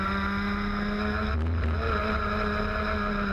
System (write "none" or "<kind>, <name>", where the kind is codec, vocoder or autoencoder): none